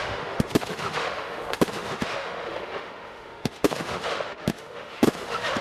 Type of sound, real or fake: fake